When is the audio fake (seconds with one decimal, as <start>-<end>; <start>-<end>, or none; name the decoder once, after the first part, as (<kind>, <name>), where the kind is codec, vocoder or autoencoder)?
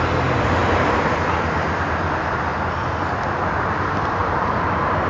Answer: 0.6-1.3 (vocoder, BigVGAN v2); 4.2-5.1